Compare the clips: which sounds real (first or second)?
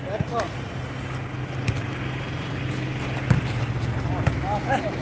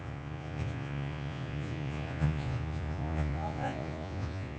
first